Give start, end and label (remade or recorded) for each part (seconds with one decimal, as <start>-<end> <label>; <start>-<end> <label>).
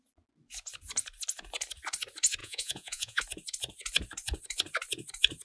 0.0-2.4 recorded; 2.4-3.2 remade; 3.2-5.4 recorded